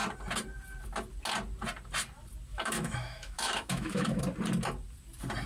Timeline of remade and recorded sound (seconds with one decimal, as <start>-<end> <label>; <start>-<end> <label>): 0.0-2.5 recorded; 2.5-4.2 remade; 4.2-5.5 recorded